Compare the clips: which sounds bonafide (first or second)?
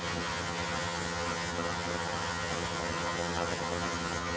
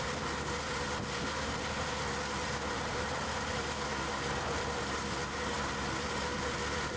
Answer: second